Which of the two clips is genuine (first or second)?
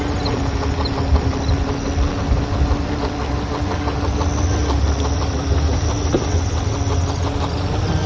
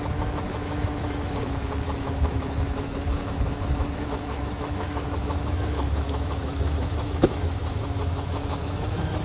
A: first